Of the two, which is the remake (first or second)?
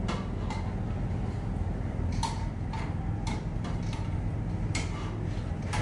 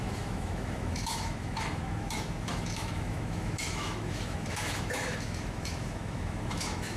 second